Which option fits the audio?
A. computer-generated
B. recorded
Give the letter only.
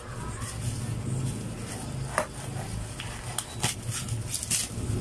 B